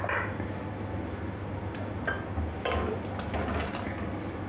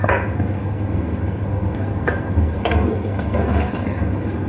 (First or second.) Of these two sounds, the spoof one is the second